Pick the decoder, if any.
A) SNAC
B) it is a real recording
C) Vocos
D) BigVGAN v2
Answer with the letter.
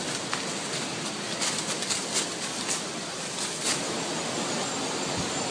B